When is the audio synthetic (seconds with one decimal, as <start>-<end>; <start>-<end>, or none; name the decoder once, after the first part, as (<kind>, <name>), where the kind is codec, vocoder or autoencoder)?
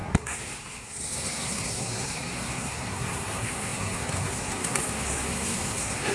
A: 0.0-6.1 (codec, SNAC)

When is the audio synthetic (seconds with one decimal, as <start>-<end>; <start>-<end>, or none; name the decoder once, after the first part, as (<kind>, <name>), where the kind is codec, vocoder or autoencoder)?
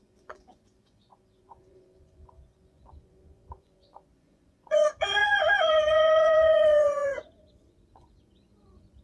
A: 0.0-9.0 (vocoder, Vocos)